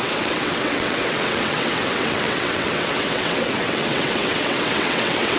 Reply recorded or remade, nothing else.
remade